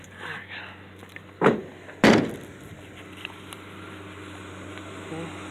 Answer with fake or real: real